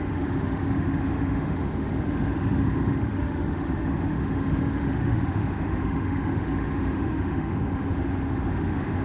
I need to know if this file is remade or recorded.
remade